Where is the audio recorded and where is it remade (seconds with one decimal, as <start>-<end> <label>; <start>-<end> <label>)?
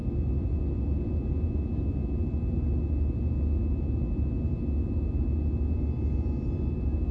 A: 0.0-7.1 recorded